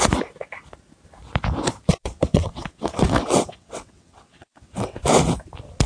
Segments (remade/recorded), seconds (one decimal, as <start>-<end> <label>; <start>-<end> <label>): 0.0-1.9 recorded; 1.9-5.0 remade; 5.0-5.9 recorded